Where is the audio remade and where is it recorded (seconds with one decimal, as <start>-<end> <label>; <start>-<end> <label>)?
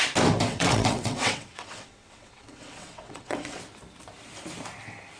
0.0-0.5 recorded; 0.5-3.6 remade; 3.6-5.2 recorded